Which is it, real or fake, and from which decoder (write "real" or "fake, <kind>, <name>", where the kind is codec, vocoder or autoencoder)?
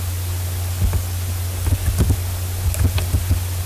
real